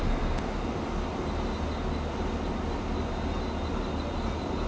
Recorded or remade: recorded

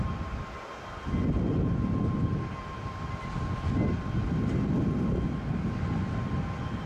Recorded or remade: recorded